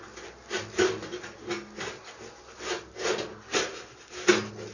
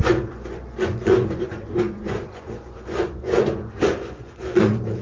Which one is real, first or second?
first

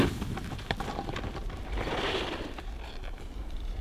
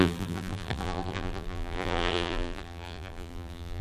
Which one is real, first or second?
first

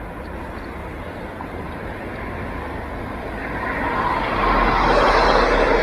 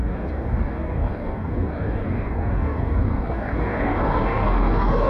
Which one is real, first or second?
first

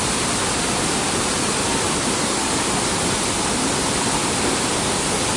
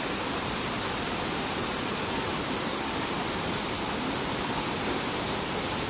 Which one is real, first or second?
first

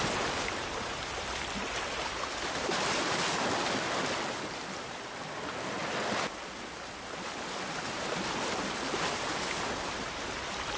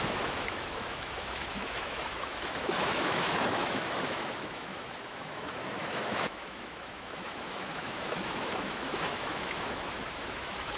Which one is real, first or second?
first